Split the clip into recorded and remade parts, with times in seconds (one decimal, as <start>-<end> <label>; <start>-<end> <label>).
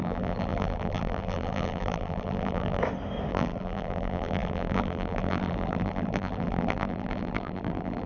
0.0-2.8 remade; 2.8-3.3 recorded; 3.3-8.1 remade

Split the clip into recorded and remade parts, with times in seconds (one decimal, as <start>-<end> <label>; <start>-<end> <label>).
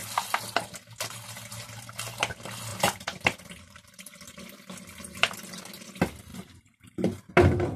0.0-2.7 recorded; 2.7-5.3 remade; 5.3-6.3 recorded; 6.3-7.3 remade; 7.3-7.8 recorded